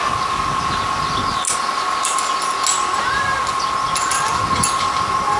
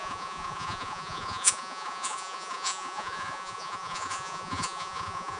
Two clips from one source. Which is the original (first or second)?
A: first